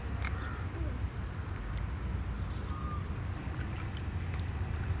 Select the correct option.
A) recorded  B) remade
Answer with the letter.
A